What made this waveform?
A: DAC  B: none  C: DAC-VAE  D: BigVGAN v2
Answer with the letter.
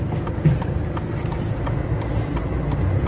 B